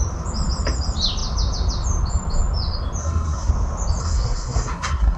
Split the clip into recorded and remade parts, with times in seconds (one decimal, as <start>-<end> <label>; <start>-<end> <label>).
0.0-3.0 recorded; 3.0-3.5 remade; 3.5-4.0 recorded; 4.0-5.2 remade